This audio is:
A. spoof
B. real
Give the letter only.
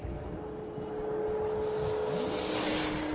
B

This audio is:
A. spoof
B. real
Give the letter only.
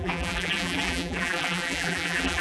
A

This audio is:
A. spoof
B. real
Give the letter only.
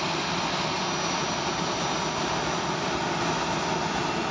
B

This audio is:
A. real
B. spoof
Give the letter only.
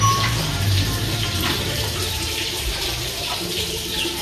B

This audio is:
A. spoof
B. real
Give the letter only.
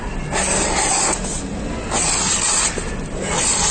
B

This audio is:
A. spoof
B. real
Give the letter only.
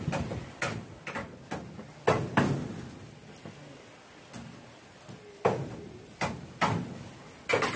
B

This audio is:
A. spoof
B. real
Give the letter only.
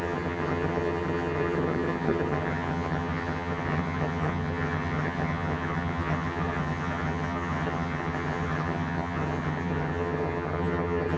A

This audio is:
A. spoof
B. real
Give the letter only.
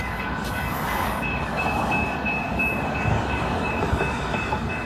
A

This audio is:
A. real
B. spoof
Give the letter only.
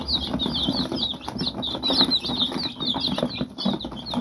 A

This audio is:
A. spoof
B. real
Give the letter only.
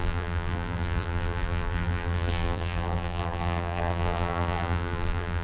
A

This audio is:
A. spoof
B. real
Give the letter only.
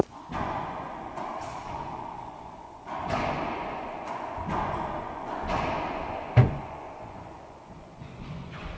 A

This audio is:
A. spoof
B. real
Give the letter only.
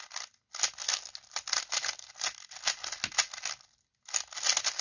B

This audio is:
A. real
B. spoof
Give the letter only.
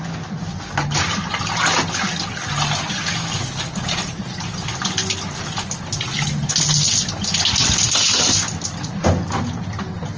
A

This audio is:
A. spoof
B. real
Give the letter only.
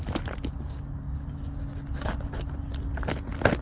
B